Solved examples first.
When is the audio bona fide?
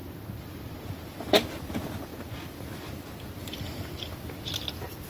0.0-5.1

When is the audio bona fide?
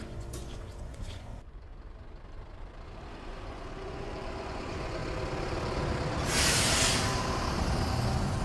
1.7-3.1; 5.0-8.4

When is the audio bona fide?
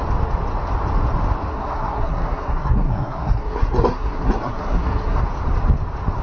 0.0-1.5; 5.2-6.2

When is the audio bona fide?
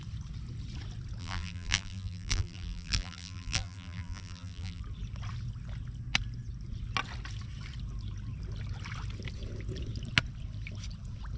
0.0-1.2; 4.8-11.4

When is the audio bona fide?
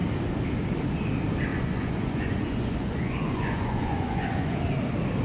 0.0-1.5; 4.6-5.2